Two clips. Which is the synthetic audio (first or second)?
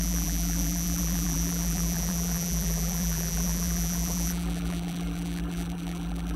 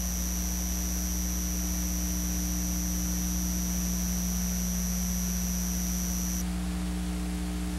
first